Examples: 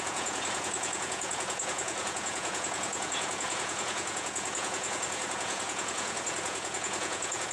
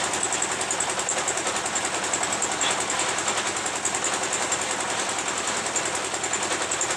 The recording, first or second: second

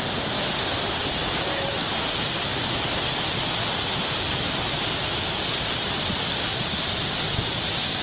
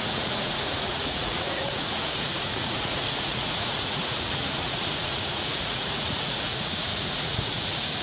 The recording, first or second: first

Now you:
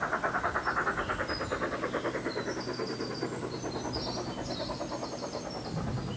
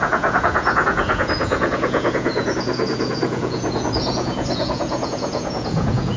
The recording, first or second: first